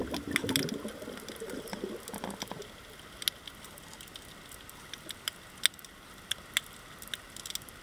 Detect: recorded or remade recorded